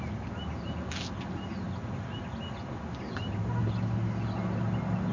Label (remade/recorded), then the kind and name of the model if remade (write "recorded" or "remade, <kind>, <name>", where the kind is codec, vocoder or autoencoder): recorded